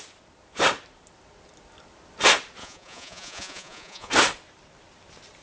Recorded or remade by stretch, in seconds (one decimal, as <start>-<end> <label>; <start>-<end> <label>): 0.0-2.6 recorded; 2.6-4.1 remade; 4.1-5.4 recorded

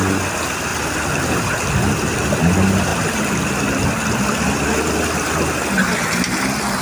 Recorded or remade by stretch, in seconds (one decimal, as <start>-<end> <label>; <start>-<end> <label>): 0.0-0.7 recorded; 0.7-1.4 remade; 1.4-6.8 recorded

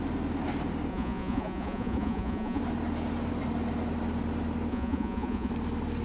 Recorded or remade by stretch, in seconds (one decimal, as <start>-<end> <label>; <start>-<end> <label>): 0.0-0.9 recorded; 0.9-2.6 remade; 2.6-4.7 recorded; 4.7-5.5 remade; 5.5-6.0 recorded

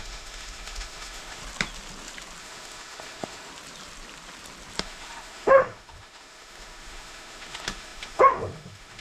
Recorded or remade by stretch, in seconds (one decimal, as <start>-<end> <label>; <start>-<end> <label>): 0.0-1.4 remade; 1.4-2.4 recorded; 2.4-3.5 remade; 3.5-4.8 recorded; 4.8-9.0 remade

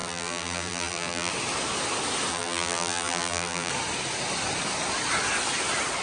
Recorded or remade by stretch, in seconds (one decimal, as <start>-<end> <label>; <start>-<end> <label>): 0.0-1.3 remade; 1.3-2.3 recorded; 2.3-3.7 remade; 3.7-6.0 recorded